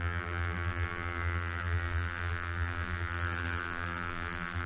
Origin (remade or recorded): remade